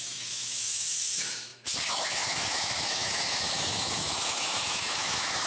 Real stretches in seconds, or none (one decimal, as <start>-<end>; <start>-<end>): none